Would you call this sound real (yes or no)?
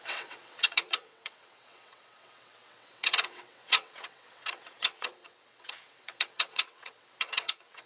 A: no